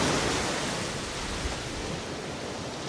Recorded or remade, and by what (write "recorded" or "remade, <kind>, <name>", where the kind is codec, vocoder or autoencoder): recorded